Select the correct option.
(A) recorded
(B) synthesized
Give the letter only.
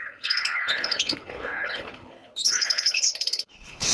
B